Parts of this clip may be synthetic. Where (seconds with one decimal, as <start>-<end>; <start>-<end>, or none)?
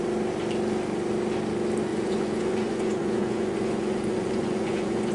1.9-5.1